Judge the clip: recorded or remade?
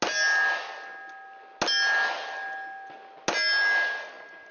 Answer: recorded